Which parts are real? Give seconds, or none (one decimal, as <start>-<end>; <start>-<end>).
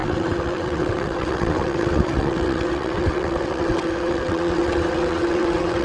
none